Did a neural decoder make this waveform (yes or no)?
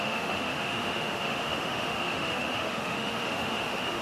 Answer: yes